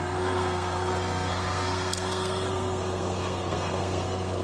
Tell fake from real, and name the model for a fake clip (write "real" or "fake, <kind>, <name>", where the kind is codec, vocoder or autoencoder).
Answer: fake, codec, SNAC